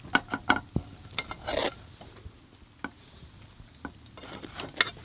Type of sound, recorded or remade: recorded